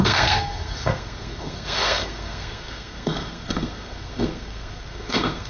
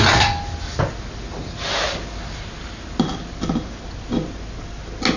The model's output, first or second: first